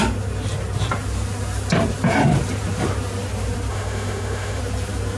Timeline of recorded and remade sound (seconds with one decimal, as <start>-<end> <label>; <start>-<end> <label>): 0.0-3.7 recorded; 3.7-4.6 remade; 4.6-5.2 recorded